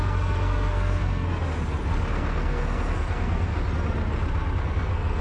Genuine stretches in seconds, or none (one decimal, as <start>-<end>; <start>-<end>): 1.4-2.1; 3.5-4.6